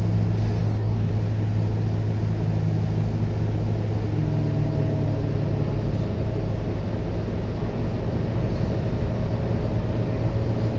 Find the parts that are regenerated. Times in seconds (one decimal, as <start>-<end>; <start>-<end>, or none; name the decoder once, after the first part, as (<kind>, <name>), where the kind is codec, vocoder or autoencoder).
0.6-1.1 (codec, DAC)